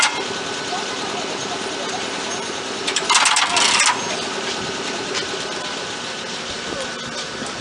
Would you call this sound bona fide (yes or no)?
yes